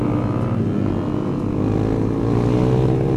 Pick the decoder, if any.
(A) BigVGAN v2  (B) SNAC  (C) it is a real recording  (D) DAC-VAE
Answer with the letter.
C